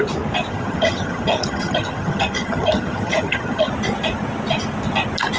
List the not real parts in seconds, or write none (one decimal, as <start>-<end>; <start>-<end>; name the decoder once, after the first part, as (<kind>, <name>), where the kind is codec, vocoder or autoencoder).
0.5-3.7 (vocoder, HiFi-GAN)

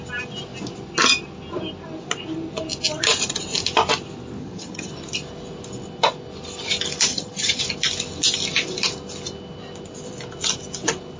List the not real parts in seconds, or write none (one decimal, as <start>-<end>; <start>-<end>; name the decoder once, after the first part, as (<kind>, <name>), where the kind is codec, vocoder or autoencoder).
4.4-4.9 (vocoder, HiFi-GAN); 7.1-7.6

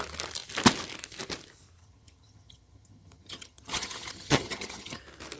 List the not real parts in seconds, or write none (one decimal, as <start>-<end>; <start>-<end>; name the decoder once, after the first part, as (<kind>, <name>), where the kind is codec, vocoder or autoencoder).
1.8-5.0 (vocoder, HiFi-GAN)

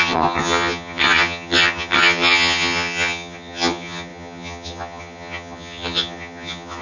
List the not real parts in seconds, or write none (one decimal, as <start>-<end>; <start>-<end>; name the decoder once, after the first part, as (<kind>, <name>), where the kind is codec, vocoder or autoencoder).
0.0-6.8 (vocoder, HiFi-GAN)